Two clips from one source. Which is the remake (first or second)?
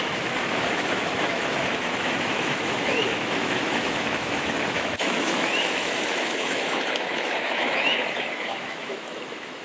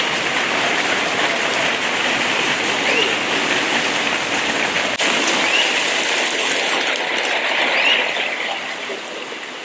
first